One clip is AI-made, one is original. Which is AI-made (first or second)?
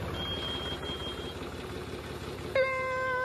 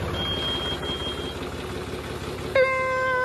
first